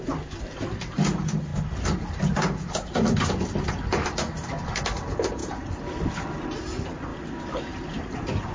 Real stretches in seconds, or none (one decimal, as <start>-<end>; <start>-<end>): 0.0-8.5